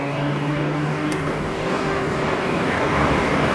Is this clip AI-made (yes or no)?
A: yes